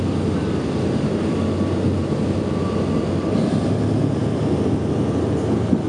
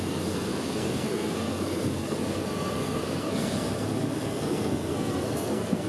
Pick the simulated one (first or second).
second